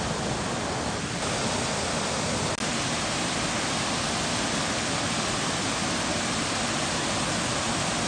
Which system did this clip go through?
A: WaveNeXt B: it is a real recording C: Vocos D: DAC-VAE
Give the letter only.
B